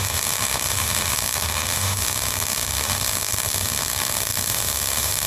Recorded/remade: remade